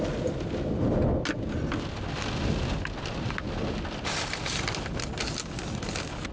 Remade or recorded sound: recorded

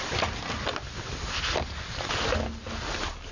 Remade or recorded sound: recorded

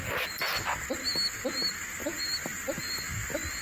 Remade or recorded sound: recorded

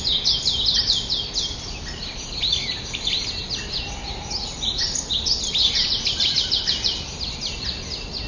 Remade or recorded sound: recorded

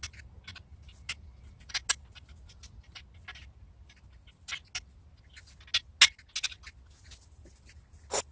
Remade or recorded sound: recorded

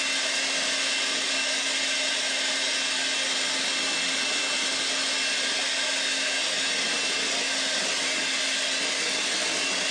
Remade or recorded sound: recorded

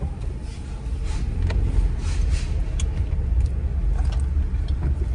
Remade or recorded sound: recorded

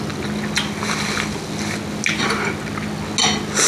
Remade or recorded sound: recorded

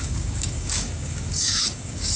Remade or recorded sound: remade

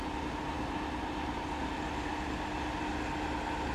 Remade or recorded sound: recorded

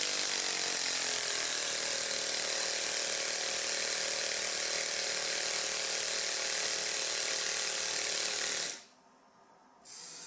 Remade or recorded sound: recorded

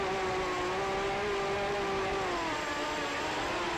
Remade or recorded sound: recorded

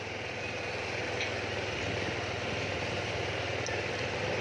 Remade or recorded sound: recorded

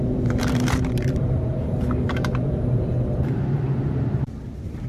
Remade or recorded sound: remade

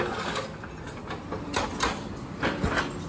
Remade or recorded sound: recorded